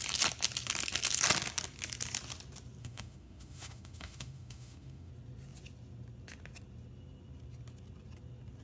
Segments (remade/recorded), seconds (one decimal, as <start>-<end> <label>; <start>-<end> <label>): 0.0-2.8 recorded; 2.8-5.1 remade; 5.1-8.6 recorded

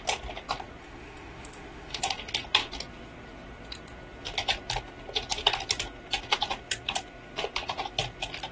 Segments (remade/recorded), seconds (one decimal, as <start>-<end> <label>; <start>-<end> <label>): 0.0-0.8 recorded; 0.8-2.0 remade; 2.0-8.5 recorded

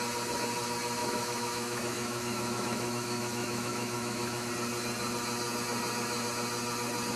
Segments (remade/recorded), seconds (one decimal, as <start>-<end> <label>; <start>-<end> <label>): 0.0-1.0 recorded; 1.0-4.5 remade; 4.5-7.2 recorded

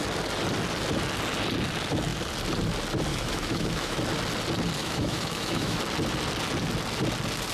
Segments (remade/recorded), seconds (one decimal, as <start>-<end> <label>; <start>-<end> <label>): 0.0-3.1 recorded; 3.1-4.0 remade; 4.0-4.8 recorded; 4.8-5.8 remade; 5.8-7.5 recorded